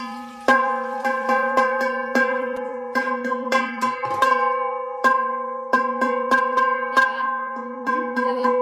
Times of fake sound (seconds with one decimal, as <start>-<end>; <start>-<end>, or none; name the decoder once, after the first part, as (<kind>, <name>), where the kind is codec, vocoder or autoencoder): 0.0-8.6 (vocoder, BigVGAN v2)